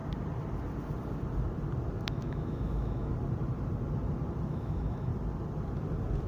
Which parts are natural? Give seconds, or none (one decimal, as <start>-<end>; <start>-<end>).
0.0-2.1; 3.1-4.5; 5.1-6.3